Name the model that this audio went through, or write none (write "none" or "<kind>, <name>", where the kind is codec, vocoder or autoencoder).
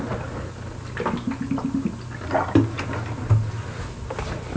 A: none